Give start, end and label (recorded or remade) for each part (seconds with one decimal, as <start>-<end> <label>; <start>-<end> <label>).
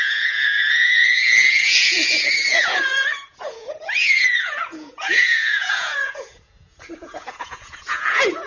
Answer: 0.0-8.5 remade